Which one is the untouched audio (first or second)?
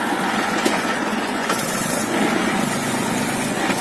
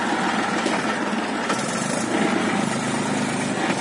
second